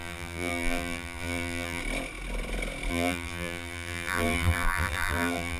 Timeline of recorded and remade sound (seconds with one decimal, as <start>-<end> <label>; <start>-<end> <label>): 0.0-1.8 remade; 1.8-2.9 recorded; 2.9-5.6 remade